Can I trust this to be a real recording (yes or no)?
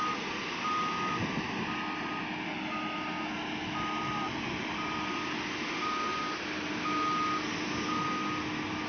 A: yes